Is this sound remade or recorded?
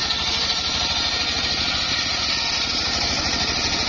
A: recorded